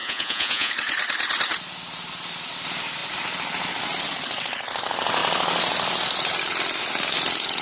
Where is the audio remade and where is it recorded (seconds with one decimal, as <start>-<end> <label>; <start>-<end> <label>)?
0.0-0.7 remade; 0.7-7.6 recorded